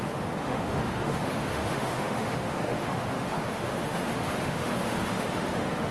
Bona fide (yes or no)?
no